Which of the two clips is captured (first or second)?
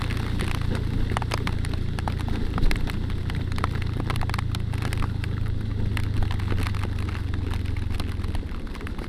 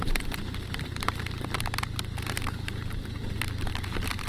first